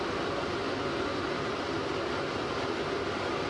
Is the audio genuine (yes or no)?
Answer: yes